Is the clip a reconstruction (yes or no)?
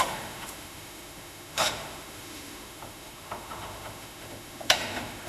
yes